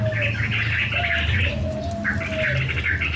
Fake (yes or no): no